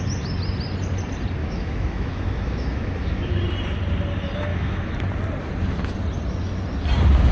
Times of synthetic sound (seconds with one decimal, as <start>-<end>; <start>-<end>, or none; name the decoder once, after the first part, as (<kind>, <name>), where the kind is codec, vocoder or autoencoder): 1.4-3.3 (autoencoder, DAC-VAE); 4.5-5.0